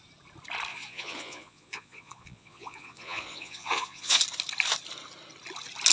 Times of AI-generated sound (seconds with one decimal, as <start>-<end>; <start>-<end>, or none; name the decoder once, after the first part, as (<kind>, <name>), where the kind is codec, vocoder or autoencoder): 0.7-4.2 (vocoder, Vocos)